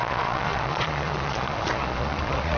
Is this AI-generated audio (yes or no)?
yes